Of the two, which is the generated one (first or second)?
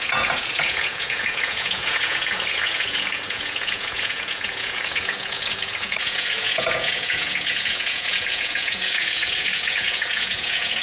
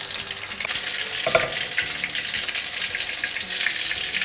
first